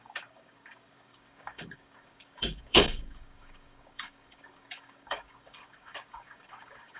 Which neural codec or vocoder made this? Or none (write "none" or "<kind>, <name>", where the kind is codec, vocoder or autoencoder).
codec, DAC